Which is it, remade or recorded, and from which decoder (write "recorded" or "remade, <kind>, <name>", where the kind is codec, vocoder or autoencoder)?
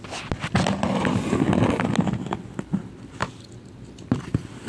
recorded